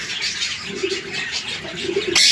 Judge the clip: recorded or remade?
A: recorded